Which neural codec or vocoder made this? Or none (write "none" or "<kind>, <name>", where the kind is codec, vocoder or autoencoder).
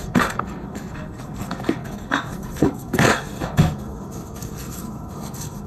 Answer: codec, SNAC